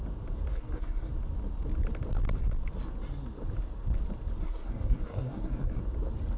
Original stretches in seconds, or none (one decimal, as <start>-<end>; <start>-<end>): 0.0-0.5; 1.1-4.4; 5.8-6.4